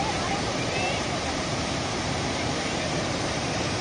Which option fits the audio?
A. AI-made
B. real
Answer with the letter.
A